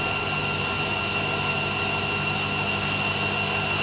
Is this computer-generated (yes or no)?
no